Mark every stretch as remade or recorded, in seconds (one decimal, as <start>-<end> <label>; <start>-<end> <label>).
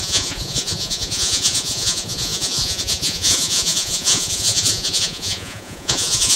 0.0-6.4 remade